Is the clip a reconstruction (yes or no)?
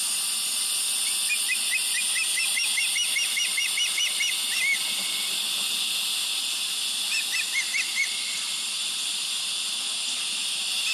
yes